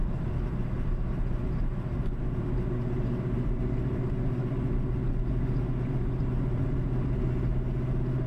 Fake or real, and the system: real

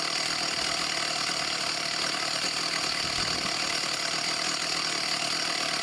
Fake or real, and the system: real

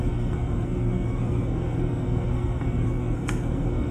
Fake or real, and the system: fake, codec, SNAC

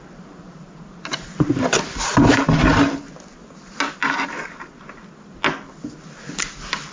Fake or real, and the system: real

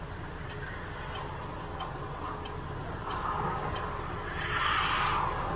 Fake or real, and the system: real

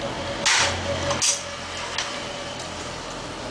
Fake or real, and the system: real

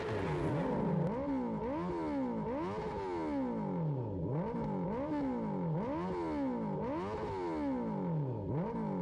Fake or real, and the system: real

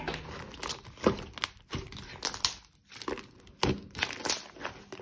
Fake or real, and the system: real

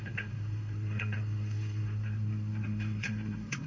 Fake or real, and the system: fake, codec, SNAC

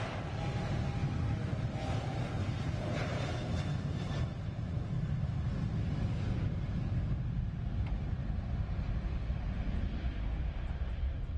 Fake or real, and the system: real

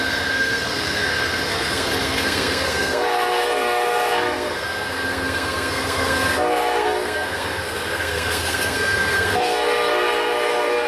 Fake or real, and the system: fake, codec, SNAC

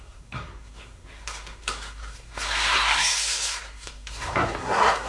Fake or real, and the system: fake, codec, SNAC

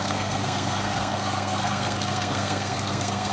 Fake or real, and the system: fake, codec, SNAC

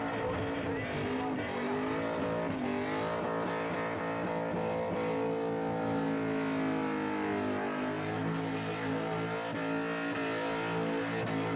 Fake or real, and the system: real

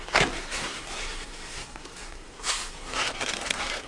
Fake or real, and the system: fake, codec, SNAC